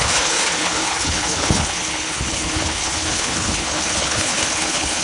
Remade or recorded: remade